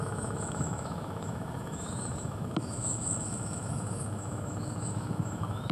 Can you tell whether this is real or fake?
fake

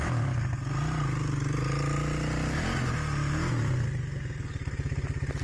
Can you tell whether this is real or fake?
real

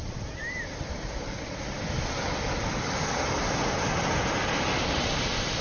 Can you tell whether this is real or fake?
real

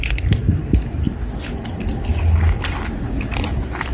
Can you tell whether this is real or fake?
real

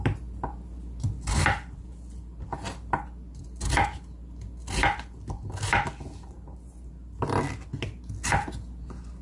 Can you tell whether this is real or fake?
real